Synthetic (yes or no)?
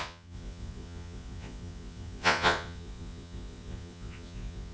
yes